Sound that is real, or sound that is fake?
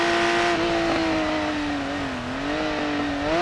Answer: real